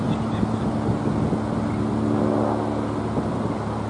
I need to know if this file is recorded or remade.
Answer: recorded